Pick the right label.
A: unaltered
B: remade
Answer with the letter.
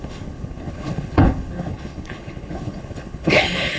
B